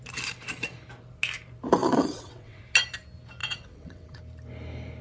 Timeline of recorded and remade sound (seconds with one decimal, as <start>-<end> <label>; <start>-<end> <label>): 0.0-1.8 recorded; 1.8-2.6 remade; 2.6-3.4 recorded; 3.4-4.2 remade; 4.2-5.0 recorded

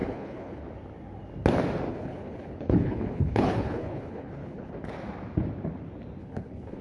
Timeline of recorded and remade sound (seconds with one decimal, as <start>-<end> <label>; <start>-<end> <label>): 0.0-0.6 remade; 0.6-1.9 recorded; 1.9-4.7 remade; 4.7-6.2 recorded; 6.2-6.8 remade

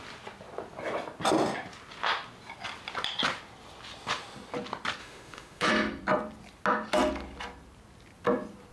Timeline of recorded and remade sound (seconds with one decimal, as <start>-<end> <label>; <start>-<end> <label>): 0.0-5.0 recorded; 5.0-5.7 remade; 5.7-8.7 recorded

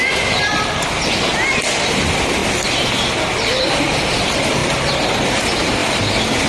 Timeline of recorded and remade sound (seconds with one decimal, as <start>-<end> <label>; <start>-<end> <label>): 0.0-6.5 recorded

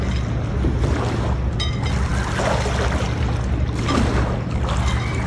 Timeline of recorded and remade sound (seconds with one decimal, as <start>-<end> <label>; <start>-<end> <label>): 0.0-5.3 recorded

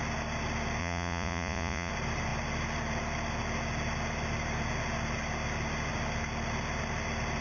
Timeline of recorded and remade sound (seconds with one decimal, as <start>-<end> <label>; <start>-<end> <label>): 0.0-0.8 recorded; 0.8-1.9 remade; 1.9-7.4 recorded

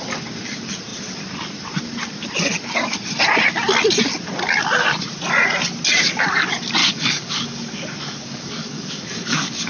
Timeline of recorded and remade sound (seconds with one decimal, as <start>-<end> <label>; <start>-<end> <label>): 0.0-6.8 recorded; 6.8-9.7 remade